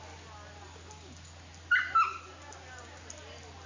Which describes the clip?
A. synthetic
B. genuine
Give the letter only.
B